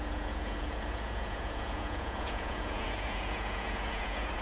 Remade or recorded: remade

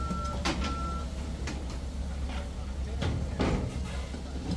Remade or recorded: recorded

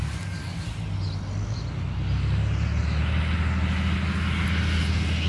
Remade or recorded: recorded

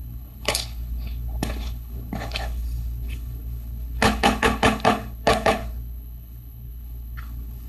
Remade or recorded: remade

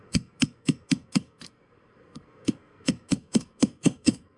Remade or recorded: remade